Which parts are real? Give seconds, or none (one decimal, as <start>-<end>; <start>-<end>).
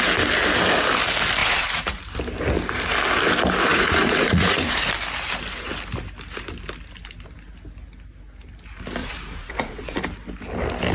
0.0-1.4; 2.0-3.7; 4.9-9.0; 10.0-10.9